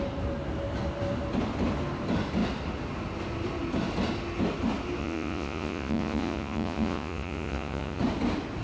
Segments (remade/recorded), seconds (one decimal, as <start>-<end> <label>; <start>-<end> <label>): 0.0-5.0 recorded; 5.0-8.0 remade; 8.0-8.6 recorded